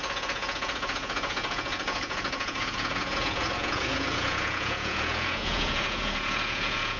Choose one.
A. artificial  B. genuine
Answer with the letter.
A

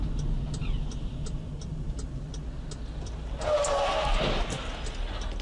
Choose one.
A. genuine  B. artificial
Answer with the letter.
A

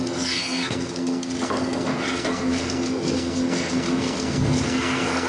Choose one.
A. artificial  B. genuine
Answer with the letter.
A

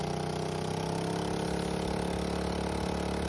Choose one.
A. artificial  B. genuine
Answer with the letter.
B